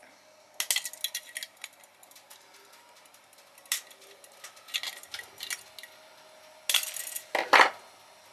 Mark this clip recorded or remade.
recorded